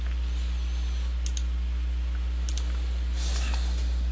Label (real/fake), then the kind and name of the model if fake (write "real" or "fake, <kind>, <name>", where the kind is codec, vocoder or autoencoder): real